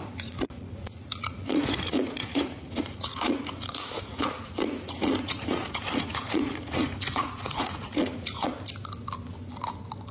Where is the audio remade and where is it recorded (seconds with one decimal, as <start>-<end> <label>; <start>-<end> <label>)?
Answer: 0.0-8.5 remade; 8.5-10.1 recorded